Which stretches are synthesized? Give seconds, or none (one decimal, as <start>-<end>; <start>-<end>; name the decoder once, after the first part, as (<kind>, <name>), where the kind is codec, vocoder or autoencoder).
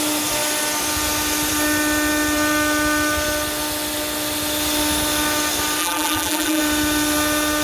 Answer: 5.8-6.6 (vocoder, BigVGAN v2)